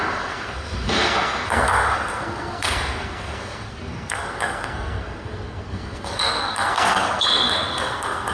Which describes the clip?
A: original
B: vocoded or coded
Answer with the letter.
B